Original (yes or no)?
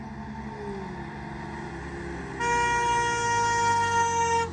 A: yes